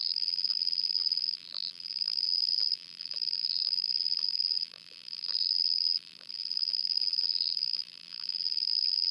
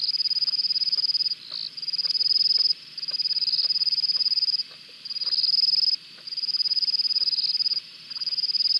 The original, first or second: second